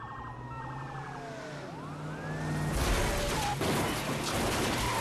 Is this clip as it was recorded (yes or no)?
yes